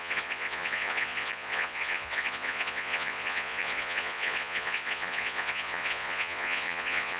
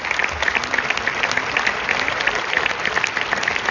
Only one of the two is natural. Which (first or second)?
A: second